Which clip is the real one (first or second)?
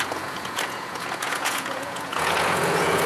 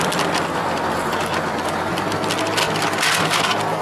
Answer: second